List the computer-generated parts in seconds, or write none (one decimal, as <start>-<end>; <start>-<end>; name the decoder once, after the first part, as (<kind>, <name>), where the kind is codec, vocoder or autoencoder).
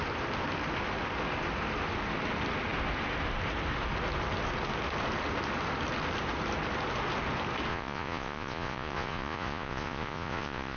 7.7-10.8 (vocoder, Vocos)